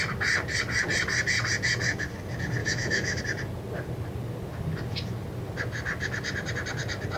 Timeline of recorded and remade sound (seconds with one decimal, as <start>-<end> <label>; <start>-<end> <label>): 0.0-2.6 recorded; 2.6-3.2 remade; 3.2-7.2 recorded